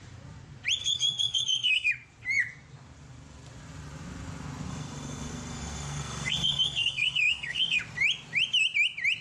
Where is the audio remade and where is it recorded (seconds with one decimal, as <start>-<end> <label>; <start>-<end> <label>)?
0.0-0.8 recorded; 0.8-1.9 remade; 1.9-4.7 recorded; 4.7-7.8 remade; 7.8-9.2 recorded